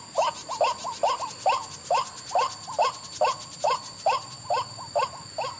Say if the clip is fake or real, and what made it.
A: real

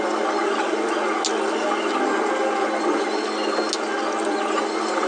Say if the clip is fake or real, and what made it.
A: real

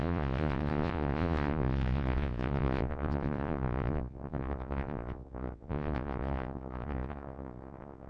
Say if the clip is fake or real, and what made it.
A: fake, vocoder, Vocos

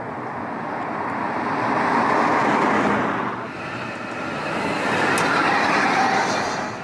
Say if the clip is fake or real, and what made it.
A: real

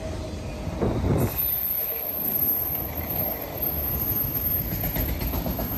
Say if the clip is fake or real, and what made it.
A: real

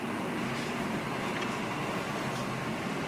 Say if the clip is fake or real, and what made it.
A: fake, vocoder, BigVGAN v2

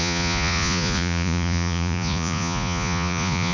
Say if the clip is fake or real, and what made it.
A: fake, vocoder, Vocos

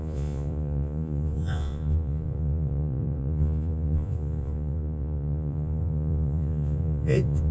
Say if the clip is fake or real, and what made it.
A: fake, vocoder, Vocos